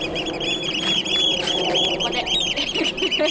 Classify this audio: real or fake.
real